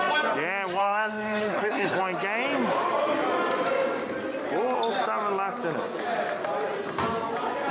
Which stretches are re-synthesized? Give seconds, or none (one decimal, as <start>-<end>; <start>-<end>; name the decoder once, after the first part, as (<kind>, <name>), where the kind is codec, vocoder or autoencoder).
0.8-2.0 (codec, SNAC)